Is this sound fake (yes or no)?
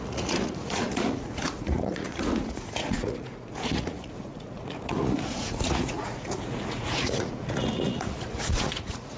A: yes